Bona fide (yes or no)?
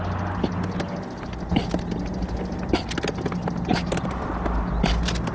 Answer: yes